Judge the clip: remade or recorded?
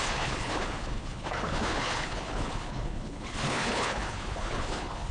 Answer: remade